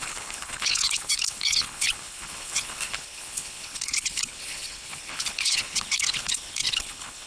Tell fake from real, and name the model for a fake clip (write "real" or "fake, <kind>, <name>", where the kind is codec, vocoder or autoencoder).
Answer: fake, codec, HILCodec